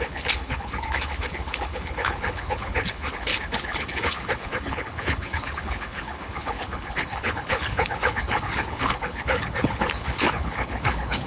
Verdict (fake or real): fake